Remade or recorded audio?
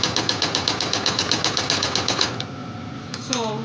recorded